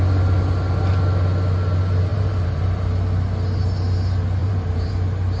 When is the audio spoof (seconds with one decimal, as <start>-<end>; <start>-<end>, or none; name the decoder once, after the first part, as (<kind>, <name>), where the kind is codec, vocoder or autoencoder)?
2.1-2.8 (vocoder, BigVGAN v2); 4.4-4.9